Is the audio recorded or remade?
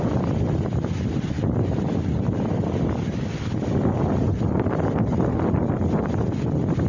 recorded